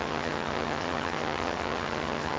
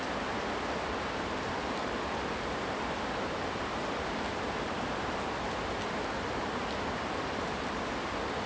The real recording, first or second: second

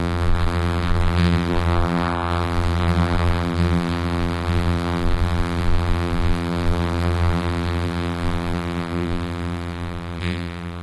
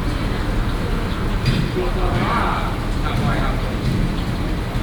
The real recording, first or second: second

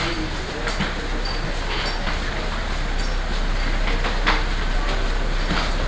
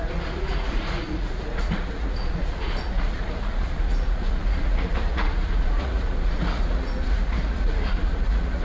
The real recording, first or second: first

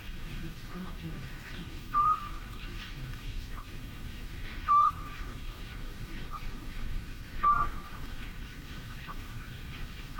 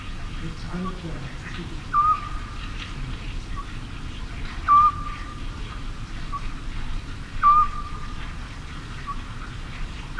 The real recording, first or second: second